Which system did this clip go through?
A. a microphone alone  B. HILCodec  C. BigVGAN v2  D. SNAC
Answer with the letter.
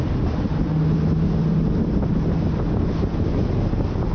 A